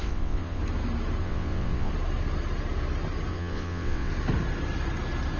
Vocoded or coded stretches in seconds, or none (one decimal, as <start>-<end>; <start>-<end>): 0.0-0.6; 1.2-1.9; 3.3-4.1